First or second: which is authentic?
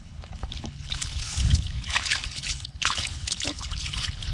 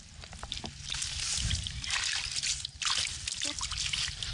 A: second